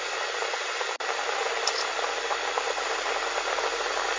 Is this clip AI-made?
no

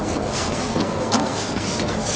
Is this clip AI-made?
yes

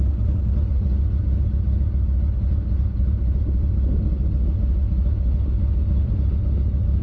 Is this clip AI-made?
no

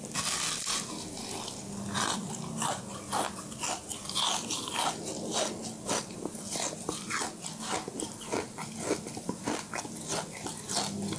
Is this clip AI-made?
no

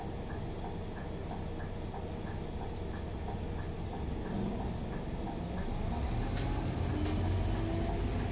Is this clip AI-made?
no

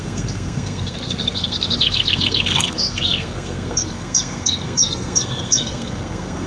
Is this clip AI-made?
yes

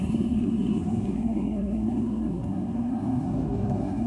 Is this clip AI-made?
yes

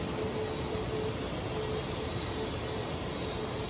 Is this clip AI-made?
no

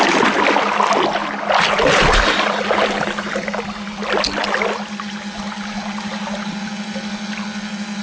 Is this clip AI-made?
no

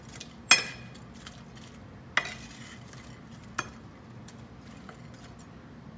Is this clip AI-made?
no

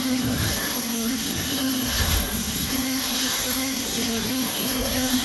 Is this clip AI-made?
yes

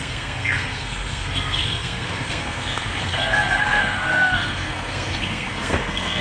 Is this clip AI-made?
yes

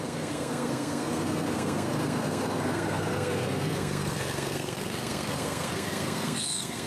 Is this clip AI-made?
yes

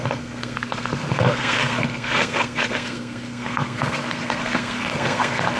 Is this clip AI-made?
yes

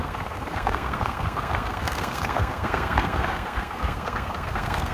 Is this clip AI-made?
yes